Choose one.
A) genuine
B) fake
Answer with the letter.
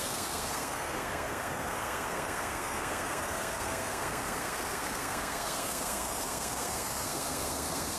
B